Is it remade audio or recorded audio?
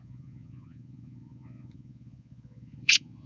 remade